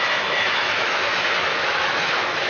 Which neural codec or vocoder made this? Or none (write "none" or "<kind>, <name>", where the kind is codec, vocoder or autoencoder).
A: autoencoder, DAC-VAE